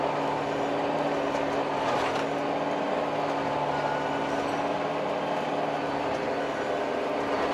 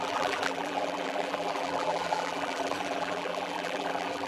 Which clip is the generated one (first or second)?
second